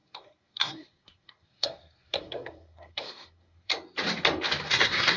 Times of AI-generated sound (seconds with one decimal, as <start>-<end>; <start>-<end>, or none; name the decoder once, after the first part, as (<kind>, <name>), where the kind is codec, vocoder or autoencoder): 0.0-3.7 (codec, SNAC); 4.7-5.2